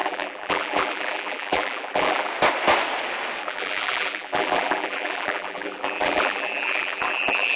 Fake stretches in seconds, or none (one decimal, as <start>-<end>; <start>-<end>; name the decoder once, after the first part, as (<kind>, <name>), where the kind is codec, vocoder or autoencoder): 0.0-2.3 (vocoder, BigVGAN v2); 3.4-7.6